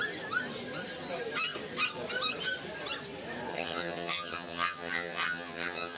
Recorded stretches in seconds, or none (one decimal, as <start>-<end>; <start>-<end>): 0.0-3.5